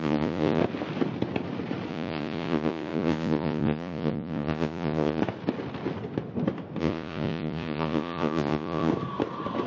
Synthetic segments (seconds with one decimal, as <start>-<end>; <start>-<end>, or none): 0.0-0.6; 1.9-5.2; 6.8-8.9